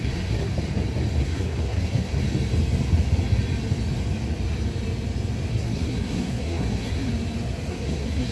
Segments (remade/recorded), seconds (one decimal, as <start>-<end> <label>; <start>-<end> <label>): 0.0-0.5 remade; 0.5-1.2 recorded; 1.2-2.2 remade; 2.2-5.5 recorded; 5.5-7.1 remade; 7.1-7.7 recorded; 7.7-8.3 remade